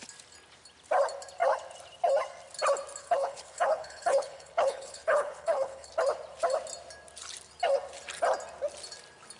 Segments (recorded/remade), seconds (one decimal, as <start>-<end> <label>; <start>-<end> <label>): 0.0-3.0 recorded; 3.0-5.9 remade; 5.9-9.4 recorded